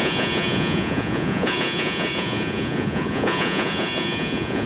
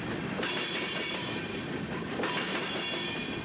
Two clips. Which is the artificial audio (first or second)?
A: first